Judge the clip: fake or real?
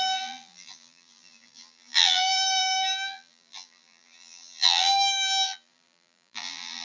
fake